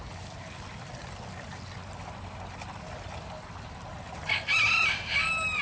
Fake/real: real